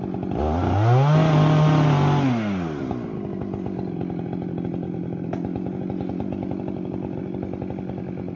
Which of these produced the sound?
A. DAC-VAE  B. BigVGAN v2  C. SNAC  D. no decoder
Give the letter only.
D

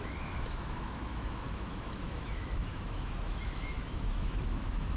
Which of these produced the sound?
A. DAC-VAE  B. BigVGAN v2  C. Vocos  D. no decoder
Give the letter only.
A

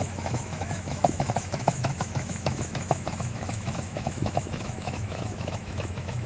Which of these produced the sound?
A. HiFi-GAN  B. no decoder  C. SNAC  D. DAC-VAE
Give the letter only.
D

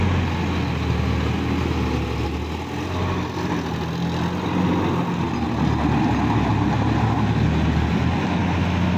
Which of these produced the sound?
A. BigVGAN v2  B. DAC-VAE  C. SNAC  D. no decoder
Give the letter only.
D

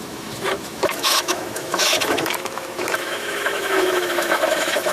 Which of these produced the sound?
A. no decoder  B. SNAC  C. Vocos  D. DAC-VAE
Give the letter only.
D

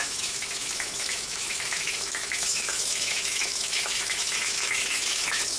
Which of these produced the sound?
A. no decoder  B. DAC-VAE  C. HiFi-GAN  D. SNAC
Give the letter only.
B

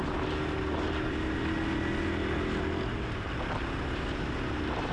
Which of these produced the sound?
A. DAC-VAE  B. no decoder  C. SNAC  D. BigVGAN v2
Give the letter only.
B